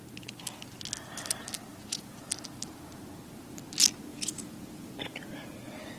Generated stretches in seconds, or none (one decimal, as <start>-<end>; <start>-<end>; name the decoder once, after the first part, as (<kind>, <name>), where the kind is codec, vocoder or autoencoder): 1.7-2.3 (vocoder, Vocos); 4.1-4.9